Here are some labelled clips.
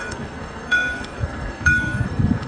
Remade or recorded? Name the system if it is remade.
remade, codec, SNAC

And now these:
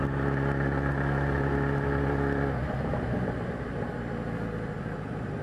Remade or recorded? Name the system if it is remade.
recorded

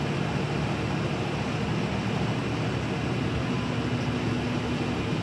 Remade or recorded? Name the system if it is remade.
recorded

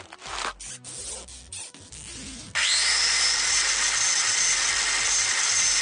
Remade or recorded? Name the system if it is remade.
recorded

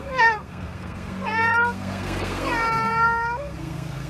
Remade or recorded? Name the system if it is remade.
remade, codec, SNAC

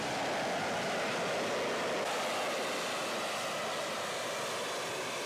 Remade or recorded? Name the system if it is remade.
recorded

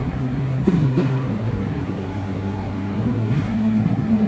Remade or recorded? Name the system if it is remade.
remade, codec, SNAC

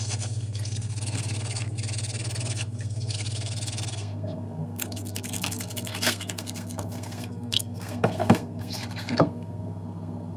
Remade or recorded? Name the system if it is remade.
remade, codec, SNAC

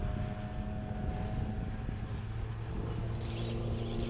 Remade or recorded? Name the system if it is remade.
recorded